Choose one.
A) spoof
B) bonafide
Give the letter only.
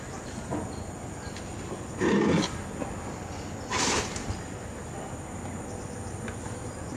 B